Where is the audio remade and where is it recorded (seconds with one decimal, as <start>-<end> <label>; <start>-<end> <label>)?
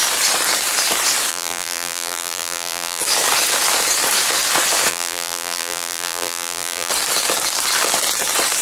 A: 0.0-1.3 recorded; 1.3-3.0 remade; 3.0-4.9 recorded; 4.9-6.9 remade; 6.9-8.6 recorded